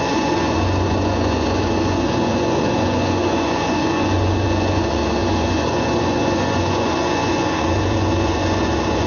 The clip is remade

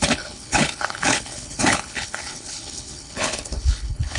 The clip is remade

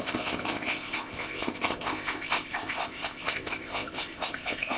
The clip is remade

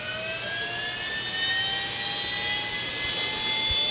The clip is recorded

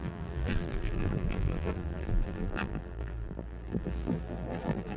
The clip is remade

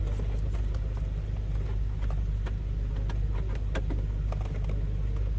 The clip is recorded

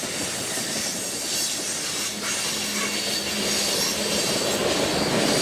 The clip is recorded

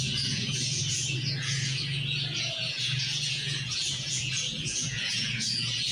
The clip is remade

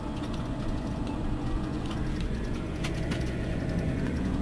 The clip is remade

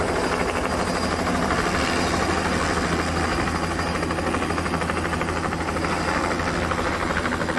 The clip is recorded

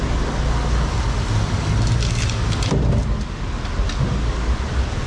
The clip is recorded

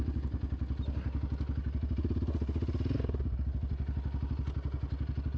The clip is recorded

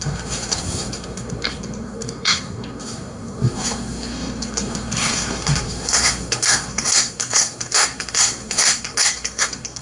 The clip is remade